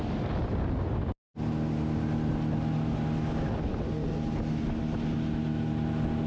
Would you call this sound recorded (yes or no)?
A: yes